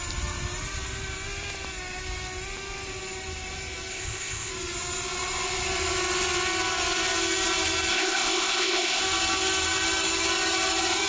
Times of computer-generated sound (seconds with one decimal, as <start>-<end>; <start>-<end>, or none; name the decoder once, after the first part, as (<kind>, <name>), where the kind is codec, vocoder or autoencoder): 3.9-4.5 (codec, ZipCodec); 7.9-9.0